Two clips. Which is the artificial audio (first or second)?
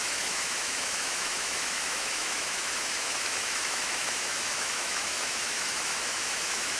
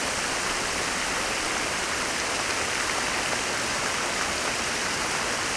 first